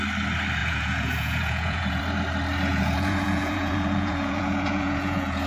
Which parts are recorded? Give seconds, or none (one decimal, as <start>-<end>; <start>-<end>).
0.0-0.6; 2.0-2.7